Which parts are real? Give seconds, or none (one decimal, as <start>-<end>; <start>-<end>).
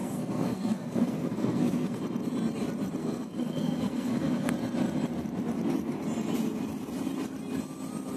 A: 2.0-3.0; 4.5-8.2